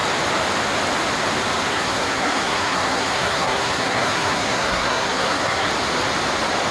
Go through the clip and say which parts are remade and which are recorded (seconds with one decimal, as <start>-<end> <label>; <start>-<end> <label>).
0.0-1.7 recorded; 1.7-5.7 remade; 5.7-6.7 recorded